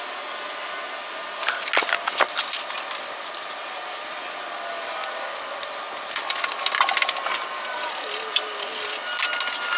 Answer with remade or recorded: recorded